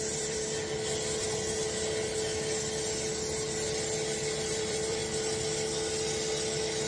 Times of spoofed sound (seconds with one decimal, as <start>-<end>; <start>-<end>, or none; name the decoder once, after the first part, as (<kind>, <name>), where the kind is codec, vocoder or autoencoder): 0.0-0.6 (vocoder, BigVGAN v2); 4.5-5.0